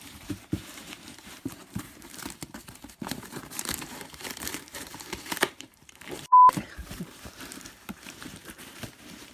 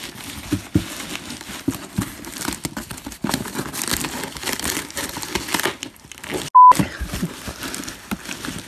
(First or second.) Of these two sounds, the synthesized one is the first